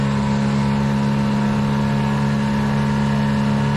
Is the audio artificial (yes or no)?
no